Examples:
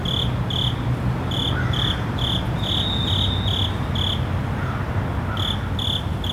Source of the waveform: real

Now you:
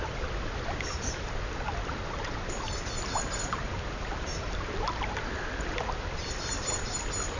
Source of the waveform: real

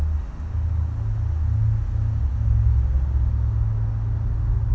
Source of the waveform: real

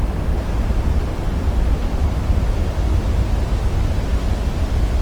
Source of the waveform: real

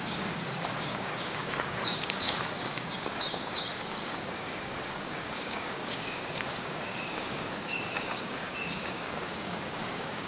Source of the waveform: fake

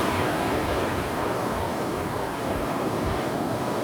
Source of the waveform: fake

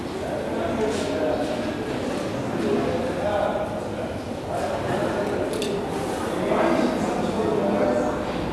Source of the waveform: real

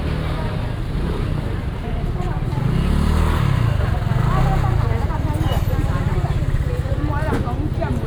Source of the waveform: real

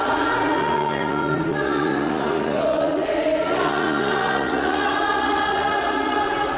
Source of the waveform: fake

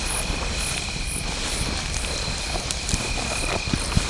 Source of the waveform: real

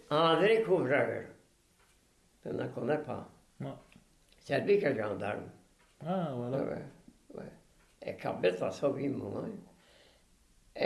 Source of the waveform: real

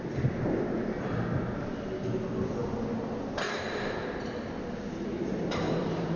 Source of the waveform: real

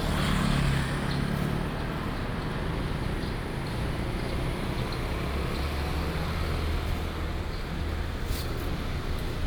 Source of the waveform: real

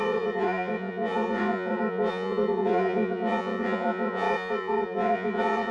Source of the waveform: fake